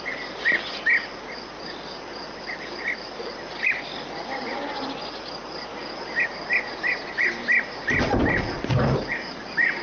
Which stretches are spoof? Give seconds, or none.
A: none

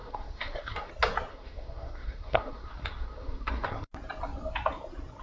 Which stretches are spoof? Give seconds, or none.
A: 0.0-0.9 (codec, SNAC); 1.3-3.9

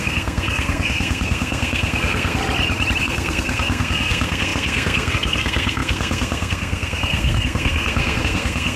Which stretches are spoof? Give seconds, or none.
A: 0.0-2.4 (codec, SNAC); 3.0-8.8

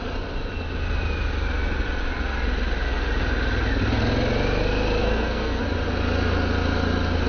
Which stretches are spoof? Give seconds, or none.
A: 5.0-5.6 (codec, SNAC)